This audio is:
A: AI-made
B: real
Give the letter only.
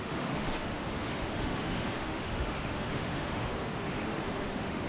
A